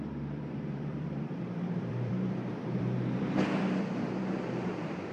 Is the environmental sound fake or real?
fake